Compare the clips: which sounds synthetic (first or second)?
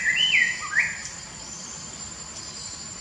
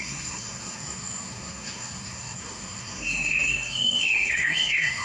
second